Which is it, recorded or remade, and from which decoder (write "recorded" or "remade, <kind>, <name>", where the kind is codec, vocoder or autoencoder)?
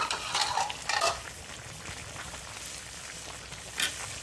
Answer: recorded